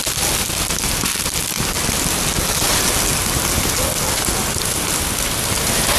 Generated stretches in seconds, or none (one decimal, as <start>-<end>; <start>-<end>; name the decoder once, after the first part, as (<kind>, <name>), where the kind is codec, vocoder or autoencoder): none